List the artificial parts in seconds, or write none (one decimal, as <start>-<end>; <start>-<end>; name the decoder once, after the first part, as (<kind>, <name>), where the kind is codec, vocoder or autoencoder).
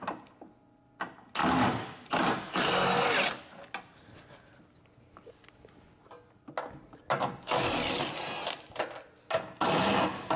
none